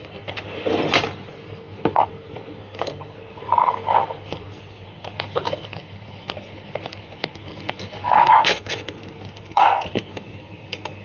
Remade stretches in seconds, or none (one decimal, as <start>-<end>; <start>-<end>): 0.0-0.7; 1.3-11.0